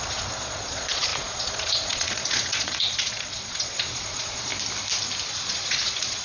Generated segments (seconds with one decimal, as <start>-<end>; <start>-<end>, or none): 0.0-4.5; 5.3-6.2